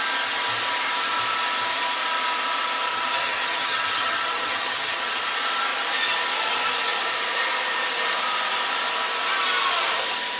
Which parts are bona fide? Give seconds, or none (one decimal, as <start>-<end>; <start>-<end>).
0.0-2.9; 5.1-10.4